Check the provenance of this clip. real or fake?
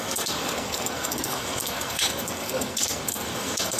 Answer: fake